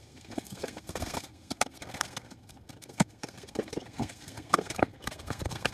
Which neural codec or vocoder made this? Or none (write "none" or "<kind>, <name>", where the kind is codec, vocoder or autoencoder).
codec, SNAC